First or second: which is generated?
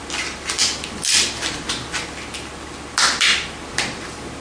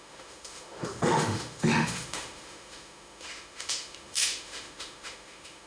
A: second